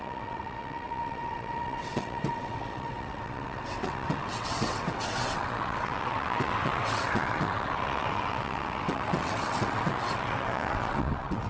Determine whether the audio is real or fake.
fake